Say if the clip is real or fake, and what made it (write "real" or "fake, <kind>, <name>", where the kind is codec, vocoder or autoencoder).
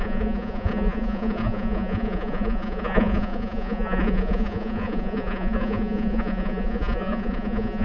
fake, vocoder, Vocos